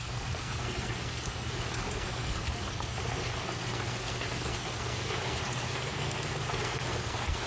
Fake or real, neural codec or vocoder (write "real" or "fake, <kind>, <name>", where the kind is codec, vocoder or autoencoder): fake, codec, SNAC